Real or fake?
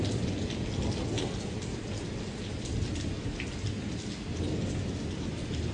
real